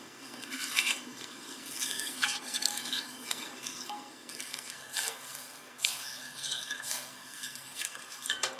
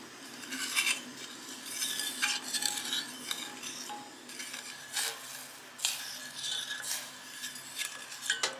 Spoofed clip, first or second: first